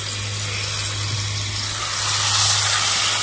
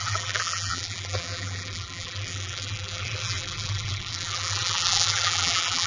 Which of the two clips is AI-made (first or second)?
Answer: second